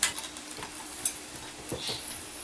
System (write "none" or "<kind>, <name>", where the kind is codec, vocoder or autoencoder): none